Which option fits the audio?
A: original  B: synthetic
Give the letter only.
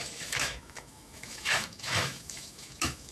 B